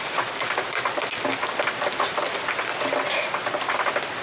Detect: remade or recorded recorded